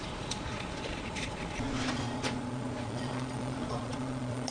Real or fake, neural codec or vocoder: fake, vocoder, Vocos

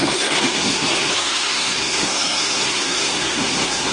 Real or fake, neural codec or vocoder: fake, codec, SNAC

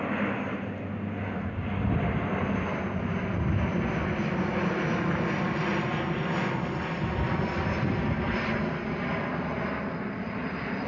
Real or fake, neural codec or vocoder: real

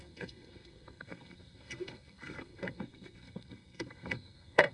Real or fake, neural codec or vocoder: fake, codec, SNAC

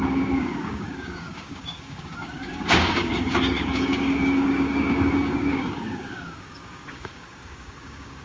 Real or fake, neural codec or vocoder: fake, codec, DAC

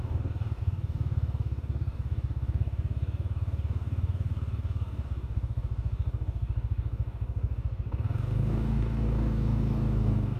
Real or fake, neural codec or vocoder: fake, codec, DAC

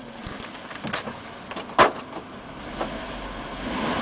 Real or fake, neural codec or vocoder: real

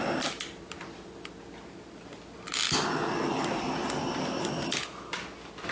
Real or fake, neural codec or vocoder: real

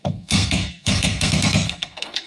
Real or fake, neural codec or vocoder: fake, codec, SNAC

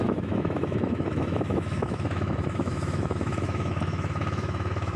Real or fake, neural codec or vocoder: fake, autoencoder, DAC-VAE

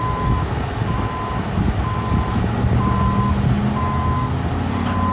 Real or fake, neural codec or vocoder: real